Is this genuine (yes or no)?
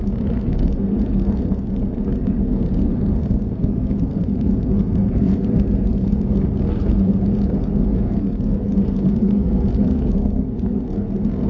no